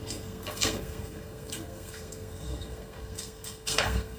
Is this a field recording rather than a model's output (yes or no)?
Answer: no